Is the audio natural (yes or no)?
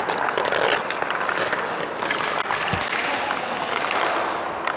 yes